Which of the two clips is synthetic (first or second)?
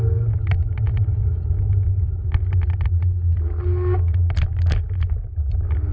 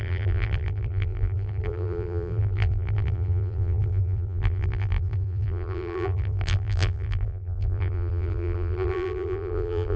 second